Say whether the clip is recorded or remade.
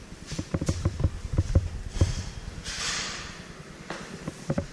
remade